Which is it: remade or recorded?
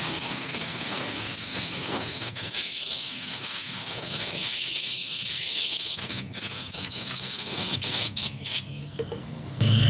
remade